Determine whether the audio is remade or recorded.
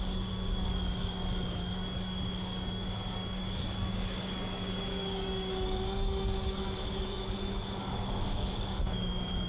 remade